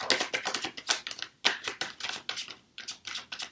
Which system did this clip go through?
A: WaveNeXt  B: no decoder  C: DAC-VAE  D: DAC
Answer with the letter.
B